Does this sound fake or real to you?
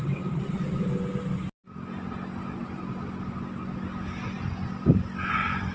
real